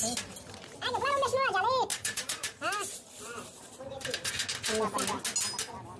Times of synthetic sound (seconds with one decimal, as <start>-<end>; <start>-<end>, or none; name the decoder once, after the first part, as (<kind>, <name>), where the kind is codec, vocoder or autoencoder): 1.9-4.3 (vocoder, BigVGAN v2)